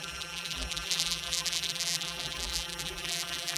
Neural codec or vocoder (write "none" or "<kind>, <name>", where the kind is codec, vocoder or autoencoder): vocoder, BigVGAN v2